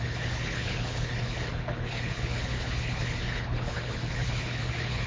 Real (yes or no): no